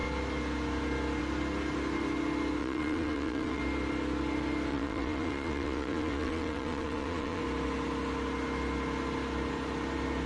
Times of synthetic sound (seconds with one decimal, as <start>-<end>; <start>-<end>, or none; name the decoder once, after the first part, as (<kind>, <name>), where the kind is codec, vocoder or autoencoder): 2.6-3.6 (vocoder, Vocos); 4.7-7.4